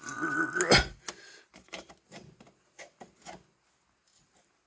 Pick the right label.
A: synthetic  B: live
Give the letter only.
B